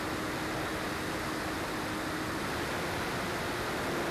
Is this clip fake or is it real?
real